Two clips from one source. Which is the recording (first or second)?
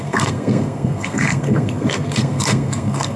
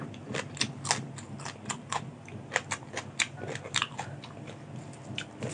second